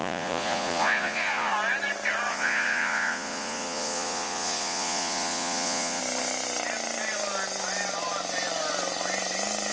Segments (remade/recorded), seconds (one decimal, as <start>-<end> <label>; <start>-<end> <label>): 0.0-1.5 remade; 1.5-2.3 recorded; 2.3-6.0 remade; 6.0-9.7 recorded